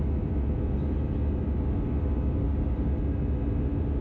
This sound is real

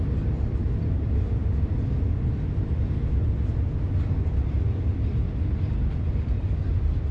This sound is real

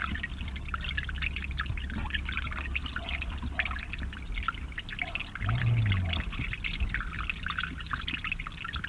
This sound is real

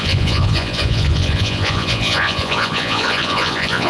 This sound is fake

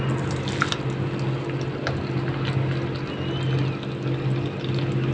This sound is real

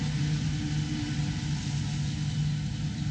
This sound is real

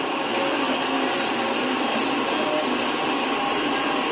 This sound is real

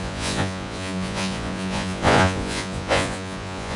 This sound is fake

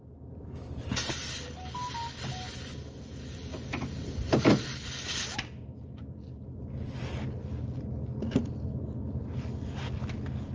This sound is real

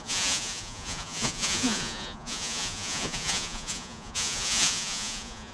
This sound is fake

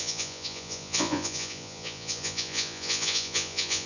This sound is fake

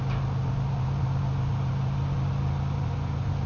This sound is real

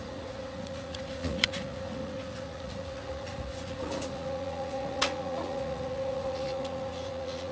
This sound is fake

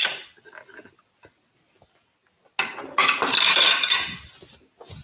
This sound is real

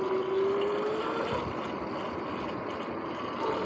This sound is real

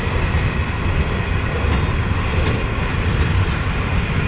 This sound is real